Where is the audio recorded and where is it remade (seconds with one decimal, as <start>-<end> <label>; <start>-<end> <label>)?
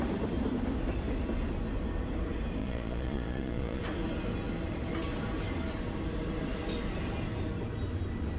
0.0-2.6 recorded; 2.6-3.8 remade; 3.8-8.4 recorded